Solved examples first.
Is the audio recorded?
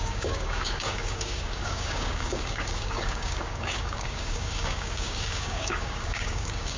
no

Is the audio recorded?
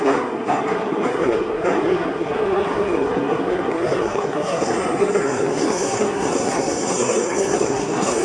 no